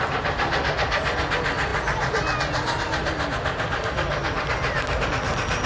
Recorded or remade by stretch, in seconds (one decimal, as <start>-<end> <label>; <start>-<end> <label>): 0.0-5.7 recorded